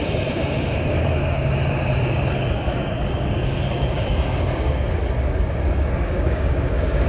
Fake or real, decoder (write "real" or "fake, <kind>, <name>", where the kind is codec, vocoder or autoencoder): fake, codec, DAC